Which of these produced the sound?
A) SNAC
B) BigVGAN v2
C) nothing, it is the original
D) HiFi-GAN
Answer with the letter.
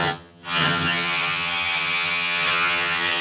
D